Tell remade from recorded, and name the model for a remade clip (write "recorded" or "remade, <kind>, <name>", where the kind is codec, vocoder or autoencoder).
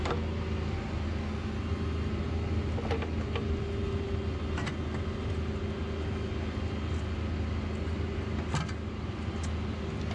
recorded